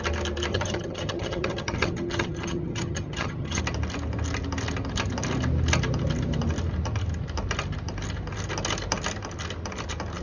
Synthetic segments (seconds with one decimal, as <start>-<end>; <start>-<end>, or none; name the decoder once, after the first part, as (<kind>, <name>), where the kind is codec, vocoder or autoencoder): 0.5-3.6 (vocoder, HiFi-GAN)